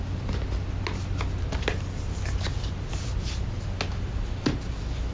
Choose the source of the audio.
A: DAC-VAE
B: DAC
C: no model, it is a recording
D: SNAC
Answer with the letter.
C